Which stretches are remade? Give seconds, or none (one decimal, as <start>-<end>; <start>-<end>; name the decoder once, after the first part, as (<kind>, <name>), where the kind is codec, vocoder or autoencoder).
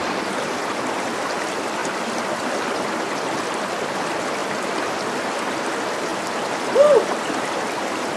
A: none